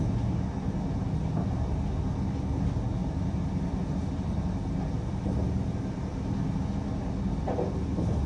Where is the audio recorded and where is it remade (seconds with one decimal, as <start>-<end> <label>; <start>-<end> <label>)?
0.0-8.3 recorded